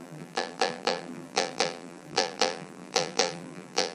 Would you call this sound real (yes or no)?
no